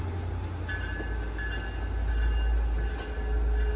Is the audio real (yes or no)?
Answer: yes